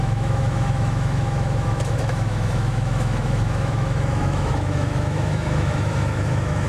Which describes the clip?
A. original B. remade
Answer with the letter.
B